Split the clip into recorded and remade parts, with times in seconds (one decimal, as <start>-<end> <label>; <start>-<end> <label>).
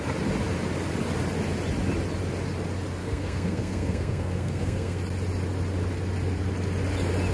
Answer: 0.0-3.0 recorded; 3.0-5.0 remade; 5.0-7.3 recorded